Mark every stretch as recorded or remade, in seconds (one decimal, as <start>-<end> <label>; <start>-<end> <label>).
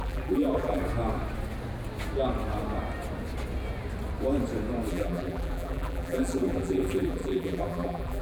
0.0-0.8 remade; 0.8-4.9 recorded; 4.9-8.2 remade